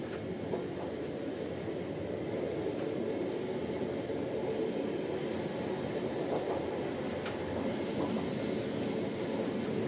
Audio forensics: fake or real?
real